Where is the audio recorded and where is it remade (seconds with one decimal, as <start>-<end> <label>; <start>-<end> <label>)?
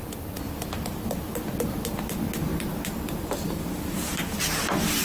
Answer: 0.0-2.5 recorded; 2.5-4.4 remade; 4.4-5.0 recorded